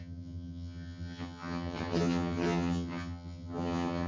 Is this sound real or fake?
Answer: fake